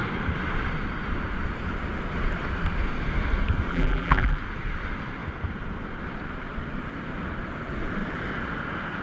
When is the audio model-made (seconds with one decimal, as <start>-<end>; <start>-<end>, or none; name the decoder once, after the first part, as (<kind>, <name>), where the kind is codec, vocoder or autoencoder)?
3.7-4.4 (vocoder, BigVGAN v2)